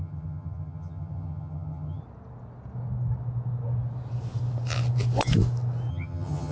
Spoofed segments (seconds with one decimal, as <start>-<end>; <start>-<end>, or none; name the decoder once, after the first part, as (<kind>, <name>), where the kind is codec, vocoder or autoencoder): 0.0-2.0 (vocoder, HiFi-GAN); 5.9-6.5